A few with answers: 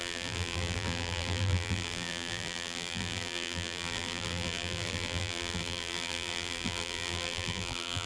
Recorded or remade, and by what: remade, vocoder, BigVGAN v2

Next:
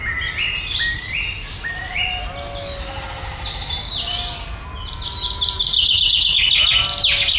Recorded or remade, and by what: recorded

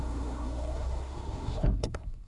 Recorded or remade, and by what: remade, codec, SNAC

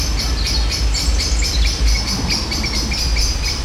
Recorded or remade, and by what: recorded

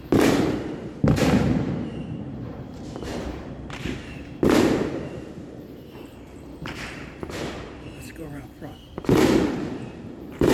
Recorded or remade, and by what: remade, vocoder, BigVGAN v2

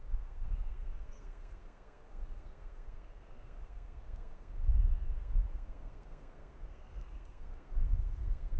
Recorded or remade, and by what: remade, codec, SNAC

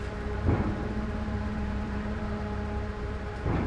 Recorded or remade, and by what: remade, vocoder, BigVGAN v2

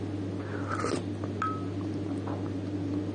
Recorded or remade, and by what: recorded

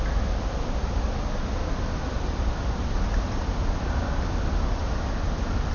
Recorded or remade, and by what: recorded